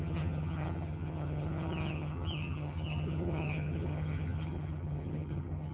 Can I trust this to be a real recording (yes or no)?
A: no